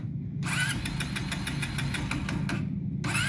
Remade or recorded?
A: recorded